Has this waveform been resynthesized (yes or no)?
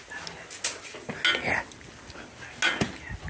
no